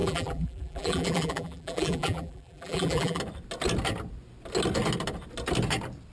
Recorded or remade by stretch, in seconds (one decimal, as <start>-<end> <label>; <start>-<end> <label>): 0.0-3.2 remade; 3.2-6.1 recorded